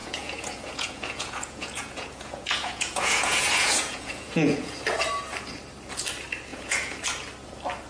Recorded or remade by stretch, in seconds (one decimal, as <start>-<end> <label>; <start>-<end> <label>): 0.0-4.7 remade; 4.7-6.5 recorded; 6.5-7.0 remade; 7.0-7.9 recorded